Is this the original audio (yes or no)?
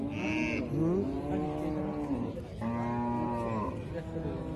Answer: yes